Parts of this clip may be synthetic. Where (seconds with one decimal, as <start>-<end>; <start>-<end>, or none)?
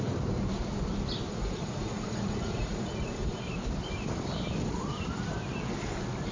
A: 1.3-3.4